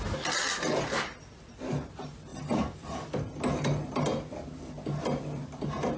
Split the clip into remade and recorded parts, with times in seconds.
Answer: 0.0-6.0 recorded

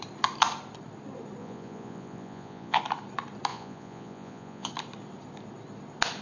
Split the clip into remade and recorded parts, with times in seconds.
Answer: 0.0-1.4 recorded; 1.4-2.8 remade; 2.8-3.5 recorded; 3.5-4.7 remade; 4.7-6.2 recorded

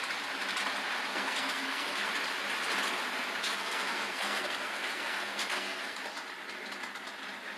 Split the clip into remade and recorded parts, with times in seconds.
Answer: 0.0-1.1 recorded; 1.1-2.1 remade; 2.1-3.4 recorded; 3.4-6.0 remade; 6.0-7.6 recorded